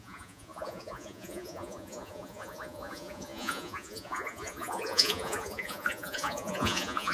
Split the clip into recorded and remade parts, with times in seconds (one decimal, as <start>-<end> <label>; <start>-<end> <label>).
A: 0.0-7.1 remade